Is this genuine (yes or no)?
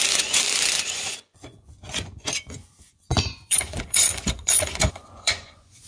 no